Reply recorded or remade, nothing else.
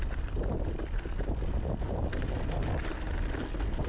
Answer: recorded